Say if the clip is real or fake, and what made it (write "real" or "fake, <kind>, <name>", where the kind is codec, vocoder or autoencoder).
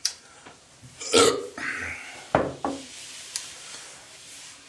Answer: fake, vocoder, BigVGAN v2